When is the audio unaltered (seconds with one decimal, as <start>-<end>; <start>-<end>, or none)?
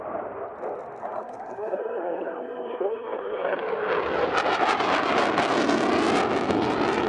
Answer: 0.0-1.0; 3.6-7.1